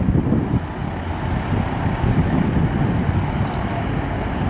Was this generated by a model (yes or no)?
no